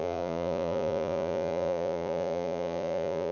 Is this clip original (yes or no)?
no